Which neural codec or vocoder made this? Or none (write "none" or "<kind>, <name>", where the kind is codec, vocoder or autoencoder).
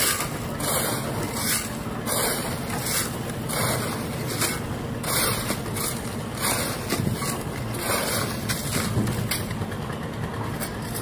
none